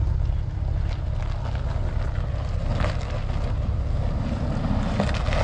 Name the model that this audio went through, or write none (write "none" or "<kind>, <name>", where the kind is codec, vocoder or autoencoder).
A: none